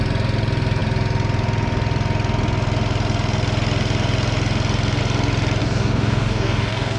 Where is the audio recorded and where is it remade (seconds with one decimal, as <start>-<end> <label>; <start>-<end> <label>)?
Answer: 0.0-5.6 recorded; 5.6-7.0 remade